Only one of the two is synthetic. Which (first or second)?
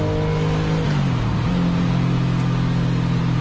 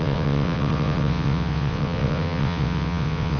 second